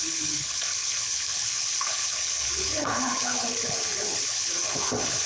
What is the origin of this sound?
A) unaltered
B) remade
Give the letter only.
B